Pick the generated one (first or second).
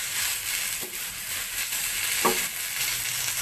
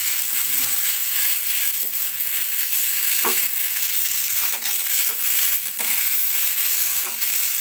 second